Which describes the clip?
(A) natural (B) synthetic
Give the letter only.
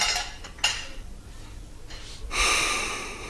A